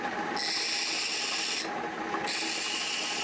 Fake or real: real